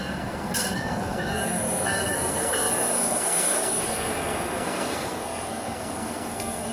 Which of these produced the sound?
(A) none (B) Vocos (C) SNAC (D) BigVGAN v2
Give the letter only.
C